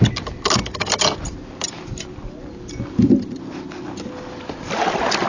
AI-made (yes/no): no